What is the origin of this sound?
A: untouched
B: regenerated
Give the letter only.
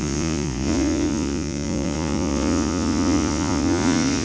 B